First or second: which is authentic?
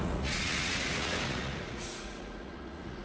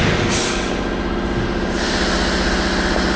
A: second